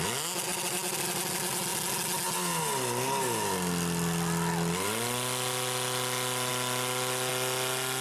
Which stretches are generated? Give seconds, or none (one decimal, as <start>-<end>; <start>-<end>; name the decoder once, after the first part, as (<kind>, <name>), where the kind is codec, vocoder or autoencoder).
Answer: none